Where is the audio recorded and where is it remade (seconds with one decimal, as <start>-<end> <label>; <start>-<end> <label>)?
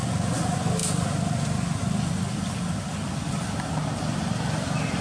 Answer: 0.0-5.0 recorded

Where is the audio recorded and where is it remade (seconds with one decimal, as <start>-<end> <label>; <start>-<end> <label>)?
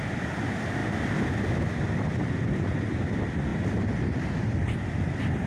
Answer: 0.0-0.8 remade; 0.8-1.8 recorded; 1.8-3.5 remade; 3.5-4.4 recorded; 4.4-5.5 remade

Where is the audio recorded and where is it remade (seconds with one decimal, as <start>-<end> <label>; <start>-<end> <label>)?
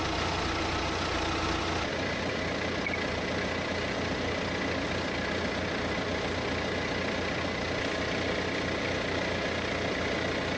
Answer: 0.0-1.9 recorded; 1.9-2.4 remade; 2.4-10.6 recorded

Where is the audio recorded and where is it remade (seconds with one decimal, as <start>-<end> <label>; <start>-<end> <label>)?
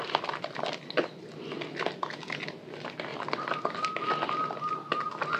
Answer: 0.0-5.4 recorded